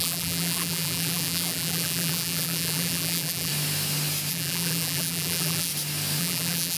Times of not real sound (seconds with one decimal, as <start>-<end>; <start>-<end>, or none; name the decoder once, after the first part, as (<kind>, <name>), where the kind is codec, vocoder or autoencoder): 0.0-3.5 (vocoder, BigVGAN v2); 4.3-5.7; 6.2-6.8